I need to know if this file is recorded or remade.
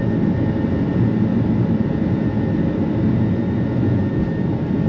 remade